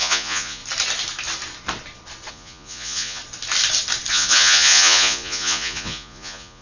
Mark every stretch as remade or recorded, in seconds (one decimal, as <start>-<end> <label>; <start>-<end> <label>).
0.0-0.6 remade; 0.6-2.3 recorded; 2.3-3.2 remade; 3.2-4.1 recorded; 4.1-6.6 remade